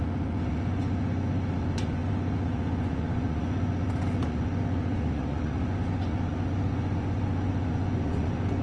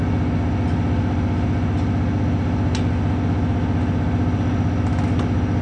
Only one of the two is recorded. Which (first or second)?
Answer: second